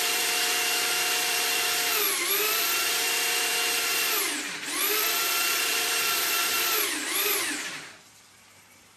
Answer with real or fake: fake